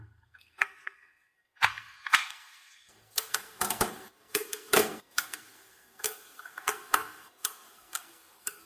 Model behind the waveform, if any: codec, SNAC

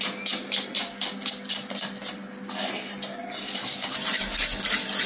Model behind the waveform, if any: none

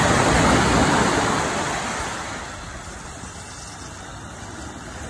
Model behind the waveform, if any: none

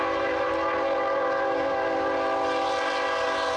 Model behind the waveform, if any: none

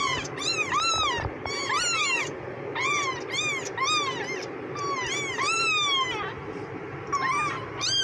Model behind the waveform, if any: none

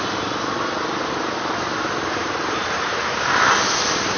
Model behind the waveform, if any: vocoder, BigVGAN v2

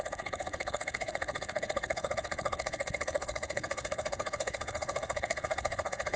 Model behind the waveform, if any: codec, HILCodec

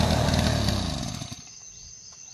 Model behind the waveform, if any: none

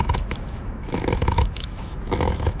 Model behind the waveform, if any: autoencoder, DAC-VAE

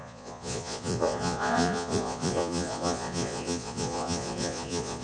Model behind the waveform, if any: vocoder, Vocos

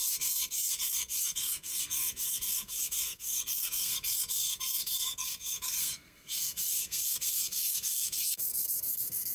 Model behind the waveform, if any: codec, SNAC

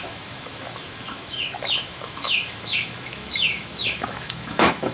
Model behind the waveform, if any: autoencoder, DAC-VAE